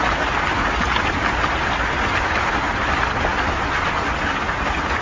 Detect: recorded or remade recorded